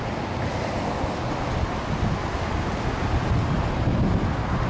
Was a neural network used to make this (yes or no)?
no